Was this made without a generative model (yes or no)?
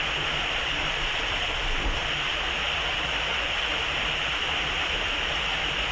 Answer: yes